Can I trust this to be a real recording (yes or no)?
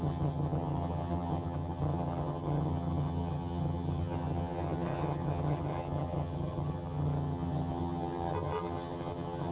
no